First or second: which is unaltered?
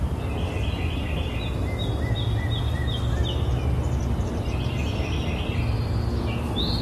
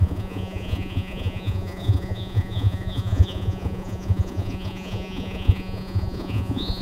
first